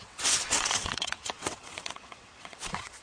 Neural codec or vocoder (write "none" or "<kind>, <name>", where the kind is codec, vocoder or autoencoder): vocoder, WaveNeXt